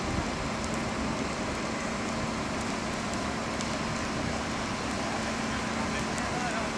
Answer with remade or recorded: recorded